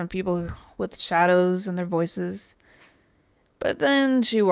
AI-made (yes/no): yes